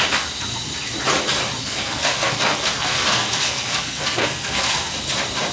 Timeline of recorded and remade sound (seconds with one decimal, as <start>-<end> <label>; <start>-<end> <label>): 0.0-1.6 recorded; 1.6-4.9 remade; 4.9-5.5 recorded